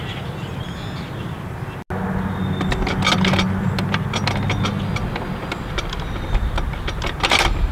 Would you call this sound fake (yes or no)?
no